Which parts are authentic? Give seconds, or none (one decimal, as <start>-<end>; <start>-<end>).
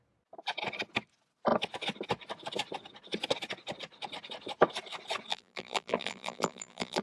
0.0-5.3